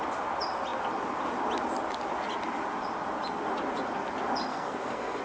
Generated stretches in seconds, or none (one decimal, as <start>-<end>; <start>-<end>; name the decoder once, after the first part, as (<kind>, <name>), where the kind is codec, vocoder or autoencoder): 4.5-5.2 (codec, SNAC)

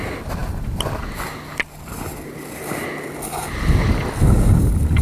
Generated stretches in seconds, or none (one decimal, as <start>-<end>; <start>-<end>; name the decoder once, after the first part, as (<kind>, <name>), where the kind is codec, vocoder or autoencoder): none

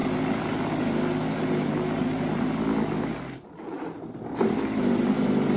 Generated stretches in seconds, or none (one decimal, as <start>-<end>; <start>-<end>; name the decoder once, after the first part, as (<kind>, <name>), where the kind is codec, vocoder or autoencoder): none

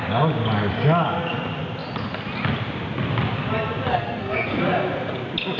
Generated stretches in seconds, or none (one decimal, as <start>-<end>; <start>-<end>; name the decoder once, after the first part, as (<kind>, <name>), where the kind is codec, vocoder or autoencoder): 3.9-4.6 (codec, SNAC)

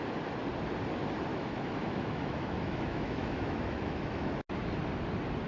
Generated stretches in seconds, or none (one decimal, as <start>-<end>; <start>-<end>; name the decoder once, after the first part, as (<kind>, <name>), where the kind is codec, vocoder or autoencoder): 1.3-4.6 (autoencoder, DAC-VAE)